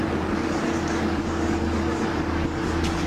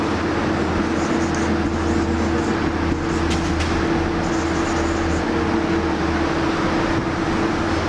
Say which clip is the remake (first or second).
first